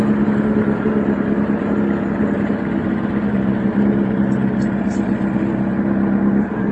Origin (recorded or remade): recorded